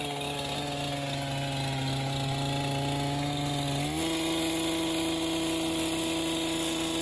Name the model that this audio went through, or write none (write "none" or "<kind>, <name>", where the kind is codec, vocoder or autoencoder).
none